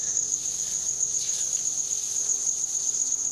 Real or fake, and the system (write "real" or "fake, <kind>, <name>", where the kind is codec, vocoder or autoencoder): real